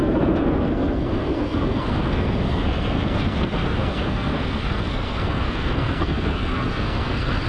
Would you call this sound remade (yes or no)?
yes